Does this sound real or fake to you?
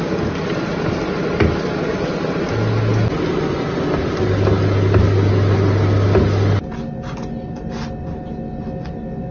real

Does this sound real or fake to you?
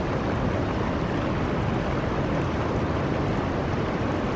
real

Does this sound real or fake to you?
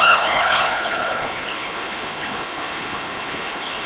fake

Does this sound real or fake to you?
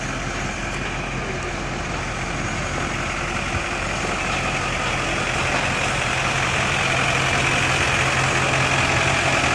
real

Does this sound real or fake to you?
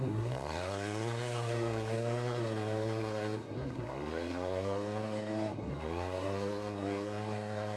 fake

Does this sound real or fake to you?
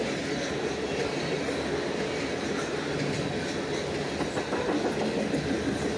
real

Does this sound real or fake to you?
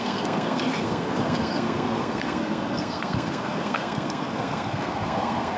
fake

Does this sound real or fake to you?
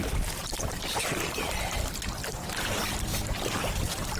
fake